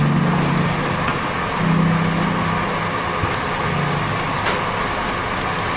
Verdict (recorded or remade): recorded